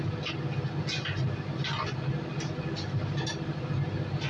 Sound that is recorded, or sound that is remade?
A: recorded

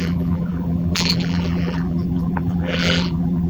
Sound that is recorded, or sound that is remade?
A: remade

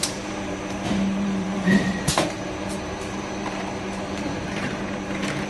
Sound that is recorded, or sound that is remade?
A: remade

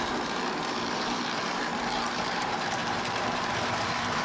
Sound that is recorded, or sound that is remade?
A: remade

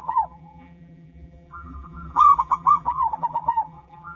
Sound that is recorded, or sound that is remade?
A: remade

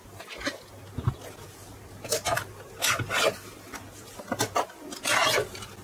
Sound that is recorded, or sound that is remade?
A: recorded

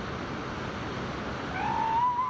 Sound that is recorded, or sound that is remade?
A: recorded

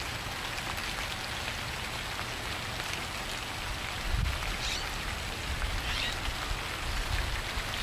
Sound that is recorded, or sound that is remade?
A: recorded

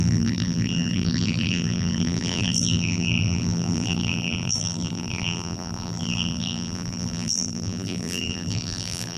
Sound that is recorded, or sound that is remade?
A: remade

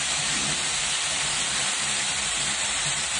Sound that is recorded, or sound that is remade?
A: remade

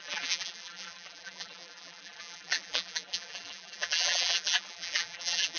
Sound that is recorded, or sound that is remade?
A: remade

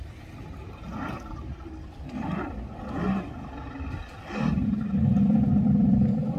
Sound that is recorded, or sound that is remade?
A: remade